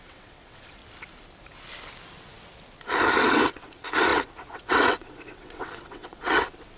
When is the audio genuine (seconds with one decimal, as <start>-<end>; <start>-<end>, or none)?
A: 0.8-3.1